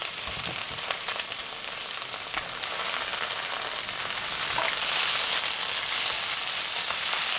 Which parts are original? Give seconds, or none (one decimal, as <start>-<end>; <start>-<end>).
1.4-7.4